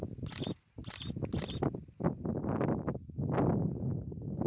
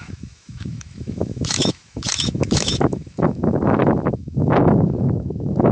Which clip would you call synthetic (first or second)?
second